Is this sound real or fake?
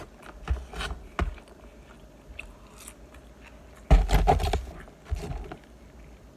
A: real